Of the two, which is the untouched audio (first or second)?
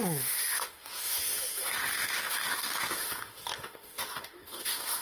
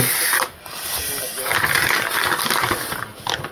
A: second